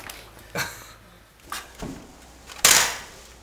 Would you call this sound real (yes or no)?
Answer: yes